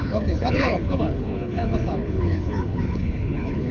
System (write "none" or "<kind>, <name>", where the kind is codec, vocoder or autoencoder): codec, HILCodec